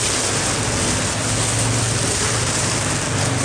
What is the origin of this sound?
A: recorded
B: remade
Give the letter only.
A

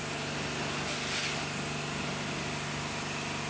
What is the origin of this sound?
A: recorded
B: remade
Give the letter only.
A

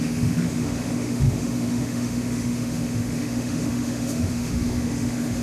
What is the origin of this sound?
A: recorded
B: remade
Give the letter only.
B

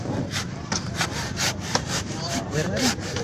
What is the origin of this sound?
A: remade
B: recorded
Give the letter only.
A